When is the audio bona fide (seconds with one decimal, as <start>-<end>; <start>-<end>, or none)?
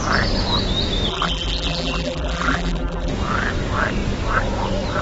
0.0-1.1; 3.1-5.0